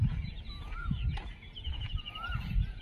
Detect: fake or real fake